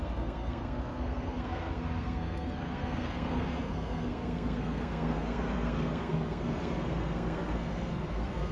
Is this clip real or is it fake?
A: fake